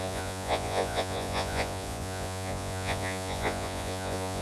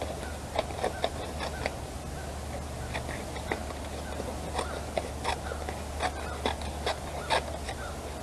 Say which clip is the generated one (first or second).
first